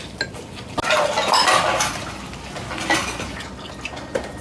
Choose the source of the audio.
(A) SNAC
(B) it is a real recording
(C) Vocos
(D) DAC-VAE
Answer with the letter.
B